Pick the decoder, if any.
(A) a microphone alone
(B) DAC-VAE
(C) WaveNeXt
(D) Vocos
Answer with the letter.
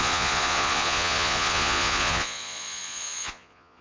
D